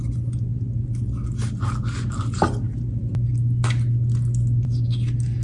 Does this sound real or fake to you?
real